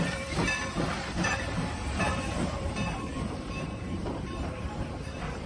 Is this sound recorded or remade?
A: remade